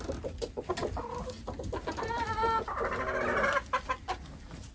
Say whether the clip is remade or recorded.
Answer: recorded